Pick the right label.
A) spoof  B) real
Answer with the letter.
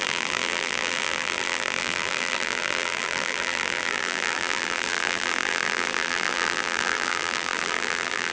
A